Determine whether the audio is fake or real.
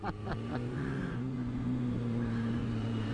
fake